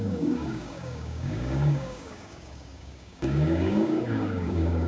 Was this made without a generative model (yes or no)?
no